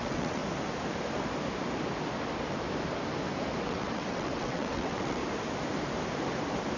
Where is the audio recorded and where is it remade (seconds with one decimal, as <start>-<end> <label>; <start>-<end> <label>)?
0.0-0.4 remade; 0.4-3.6 recorded; 3.6-5.2 remade; 5.2-6.8 recorded